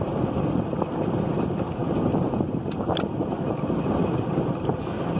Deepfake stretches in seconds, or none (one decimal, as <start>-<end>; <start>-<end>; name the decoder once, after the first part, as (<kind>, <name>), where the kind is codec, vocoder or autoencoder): none